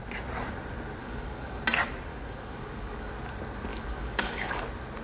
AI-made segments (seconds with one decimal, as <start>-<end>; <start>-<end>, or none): 1.0-1.6; 2.1-3.1; 3.7-4.6

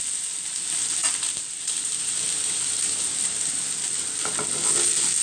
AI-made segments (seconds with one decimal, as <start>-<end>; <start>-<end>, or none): none

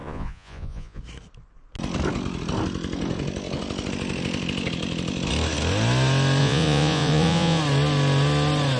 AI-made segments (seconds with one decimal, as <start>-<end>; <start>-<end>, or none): 0.0-1.0; 6.4-7.6

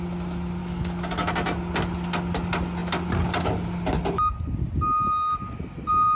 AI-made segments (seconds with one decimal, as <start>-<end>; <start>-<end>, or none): 0.6-1.3